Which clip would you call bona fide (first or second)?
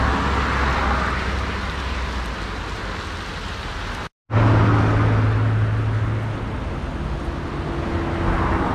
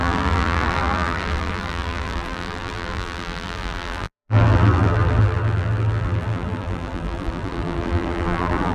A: first